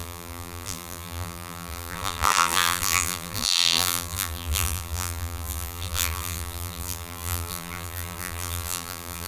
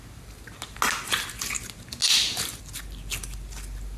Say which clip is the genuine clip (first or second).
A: second